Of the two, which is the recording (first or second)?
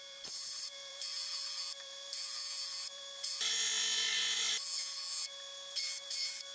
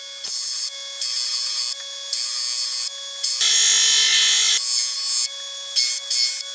second